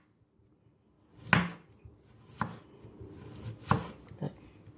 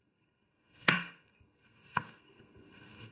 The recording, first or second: first